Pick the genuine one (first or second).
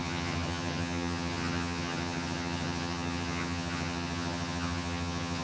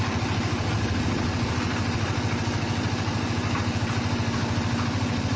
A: second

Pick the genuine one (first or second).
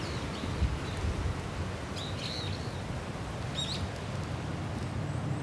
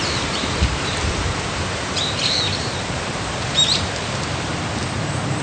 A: first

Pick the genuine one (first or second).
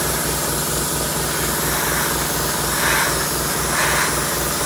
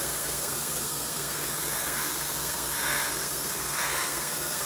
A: first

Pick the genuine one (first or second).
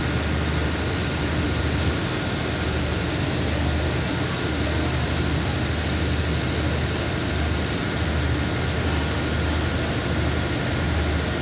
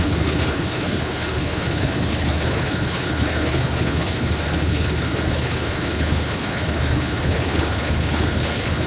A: first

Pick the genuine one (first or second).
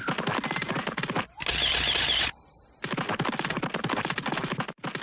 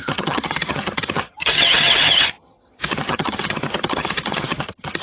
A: first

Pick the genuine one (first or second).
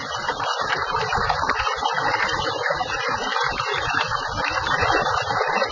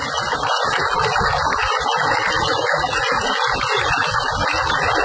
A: second